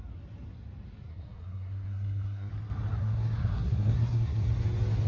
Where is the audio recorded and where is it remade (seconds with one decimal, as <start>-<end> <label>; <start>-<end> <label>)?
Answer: 0.0-1.1 recorded; 1.1-2.5 remade; 2.5-3.0 recorded; 3.0-4.4 remade; 4.4-5.1 recorded